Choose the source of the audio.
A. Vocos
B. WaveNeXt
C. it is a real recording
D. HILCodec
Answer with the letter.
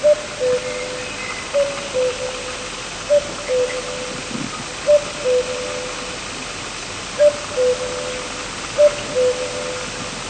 C